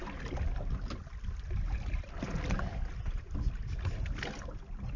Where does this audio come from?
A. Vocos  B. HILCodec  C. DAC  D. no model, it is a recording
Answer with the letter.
D